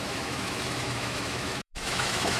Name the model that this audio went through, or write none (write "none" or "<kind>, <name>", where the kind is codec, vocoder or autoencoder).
autoencoder, DAC-VAE